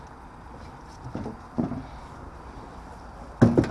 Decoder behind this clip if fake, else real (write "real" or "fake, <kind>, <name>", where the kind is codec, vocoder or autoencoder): real